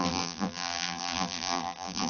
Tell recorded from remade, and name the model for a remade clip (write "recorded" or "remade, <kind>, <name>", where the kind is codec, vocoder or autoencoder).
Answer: remade, vocoder, BigVGAN v2